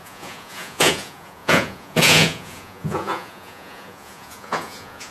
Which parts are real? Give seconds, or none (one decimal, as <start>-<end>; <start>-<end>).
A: none